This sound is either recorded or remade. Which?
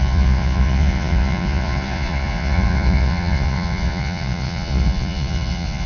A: remade